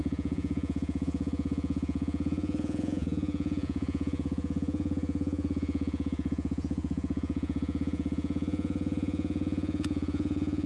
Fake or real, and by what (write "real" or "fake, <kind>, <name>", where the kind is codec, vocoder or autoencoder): fake, vocoder, Vocos